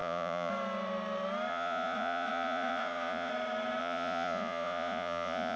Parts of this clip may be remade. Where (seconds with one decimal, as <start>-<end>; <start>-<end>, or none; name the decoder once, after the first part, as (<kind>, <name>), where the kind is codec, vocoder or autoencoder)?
0.0-0.5 (vocoder, Vocos); 1.5-3.3; 3.8-5.6

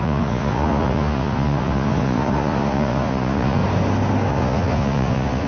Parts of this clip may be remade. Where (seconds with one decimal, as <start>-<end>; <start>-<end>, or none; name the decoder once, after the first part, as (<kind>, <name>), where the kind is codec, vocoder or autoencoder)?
0.0-3.6 (vocoder, Vocos); 4.3-5.5

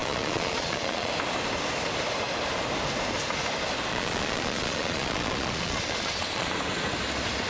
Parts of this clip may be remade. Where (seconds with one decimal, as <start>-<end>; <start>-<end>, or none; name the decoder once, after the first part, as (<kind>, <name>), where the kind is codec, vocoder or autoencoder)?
0.0-1.1 (vocoder, Vocos); 3.9-6.5